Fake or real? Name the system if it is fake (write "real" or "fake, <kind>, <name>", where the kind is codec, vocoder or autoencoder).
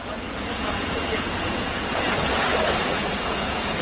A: fake, vocoder, Vocos